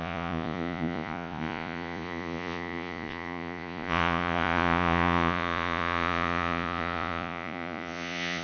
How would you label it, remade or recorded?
remade